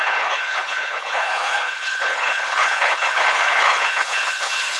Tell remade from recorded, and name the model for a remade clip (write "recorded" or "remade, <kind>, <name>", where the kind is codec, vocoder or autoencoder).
remade, codec, HILCodec